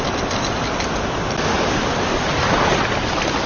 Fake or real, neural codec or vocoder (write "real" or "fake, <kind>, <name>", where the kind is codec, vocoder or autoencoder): real